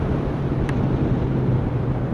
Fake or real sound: fake